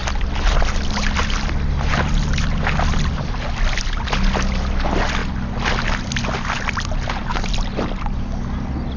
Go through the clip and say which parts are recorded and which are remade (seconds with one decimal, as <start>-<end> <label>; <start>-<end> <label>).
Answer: 0.0-1.4 remade; 1.4-7.3 recorded; 7.3-8.2 remade; 8.2-9.0 recorded